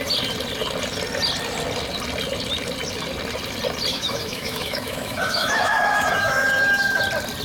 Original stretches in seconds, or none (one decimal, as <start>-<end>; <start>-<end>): 0.0-3.9; 7.0-7.4